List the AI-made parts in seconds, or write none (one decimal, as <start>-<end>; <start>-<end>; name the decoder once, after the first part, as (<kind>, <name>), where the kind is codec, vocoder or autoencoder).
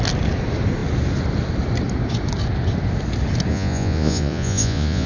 3.5-5.1 (vocoder, Vocos)